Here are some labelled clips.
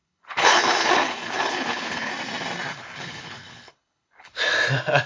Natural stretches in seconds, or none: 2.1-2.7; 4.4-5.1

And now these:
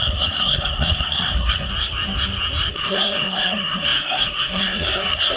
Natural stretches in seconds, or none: 1.7-2.7

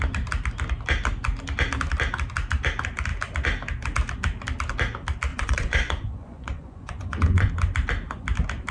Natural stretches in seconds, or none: 0.0-5.3; 7.5-8.7

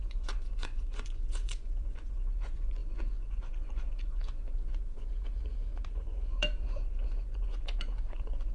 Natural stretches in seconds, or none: none

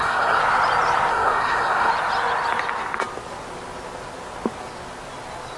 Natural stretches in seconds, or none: 0.4-1.1; 1.9-5.6

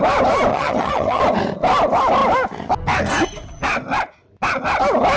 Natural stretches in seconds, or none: 0.0-0.5; 1.2-5.2